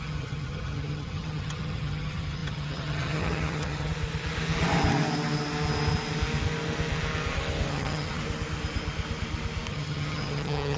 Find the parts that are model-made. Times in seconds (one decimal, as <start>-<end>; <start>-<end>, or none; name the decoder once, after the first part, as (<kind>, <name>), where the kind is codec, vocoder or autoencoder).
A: 0.0-3.9 (vocoder, HiFi-GAN); 7.7-8.2; 9.7-10.8